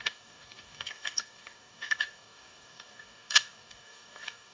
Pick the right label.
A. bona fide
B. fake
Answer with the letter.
B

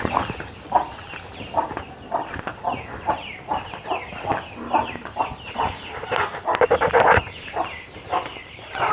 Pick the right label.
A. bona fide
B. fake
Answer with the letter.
A